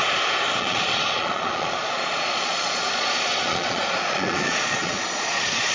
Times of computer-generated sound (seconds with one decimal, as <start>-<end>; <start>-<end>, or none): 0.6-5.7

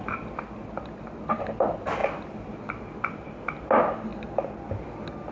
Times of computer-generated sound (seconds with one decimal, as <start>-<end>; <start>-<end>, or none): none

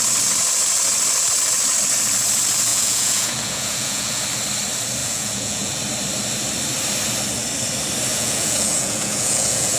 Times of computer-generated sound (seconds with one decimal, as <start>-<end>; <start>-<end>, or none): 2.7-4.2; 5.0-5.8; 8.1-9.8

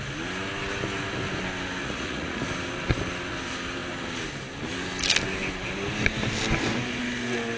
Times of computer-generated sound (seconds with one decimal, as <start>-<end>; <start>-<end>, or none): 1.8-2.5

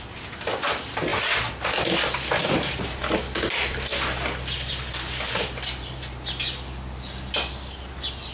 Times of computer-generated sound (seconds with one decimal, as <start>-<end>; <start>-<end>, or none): none

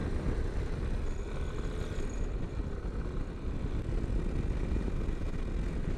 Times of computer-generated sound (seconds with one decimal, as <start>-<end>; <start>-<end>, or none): none

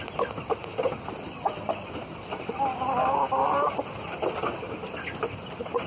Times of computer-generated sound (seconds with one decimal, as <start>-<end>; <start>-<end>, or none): none

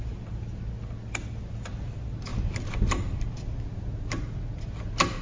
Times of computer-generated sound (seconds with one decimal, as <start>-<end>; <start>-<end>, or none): none